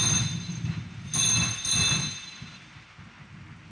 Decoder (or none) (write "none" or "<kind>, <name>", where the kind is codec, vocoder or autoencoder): none